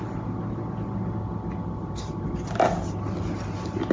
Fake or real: real